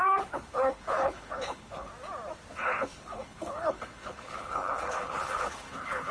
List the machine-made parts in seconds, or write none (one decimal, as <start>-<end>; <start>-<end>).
0.0-1.9; 2.5-6.1